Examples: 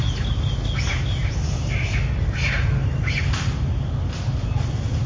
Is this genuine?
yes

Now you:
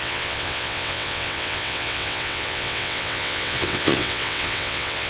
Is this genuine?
no